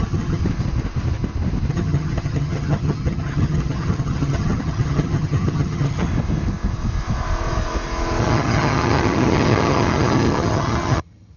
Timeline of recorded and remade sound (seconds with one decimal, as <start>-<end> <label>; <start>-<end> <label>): 0.0-0.4 remade; 0.4-1.7 recorded; 1.7-6.1 remade; 6.1-8.2 recorded; 8.2-11.4 remade